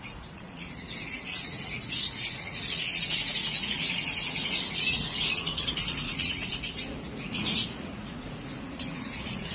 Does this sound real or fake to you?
fake